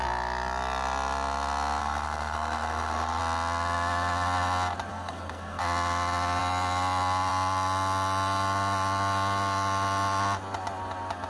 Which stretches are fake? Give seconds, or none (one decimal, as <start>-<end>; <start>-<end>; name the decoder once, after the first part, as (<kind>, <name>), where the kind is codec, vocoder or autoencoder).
1.8-3.2 (codec, SNAC); 4.9-5.6